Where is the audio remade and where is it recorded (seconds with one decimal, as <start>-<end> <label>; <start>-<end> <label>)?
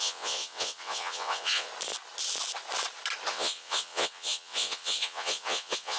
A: 0.0-1.7 remade; 1.7-3.3 recorded; 3.3-6.0 remade